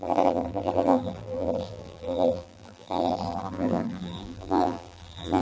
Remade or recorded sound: remade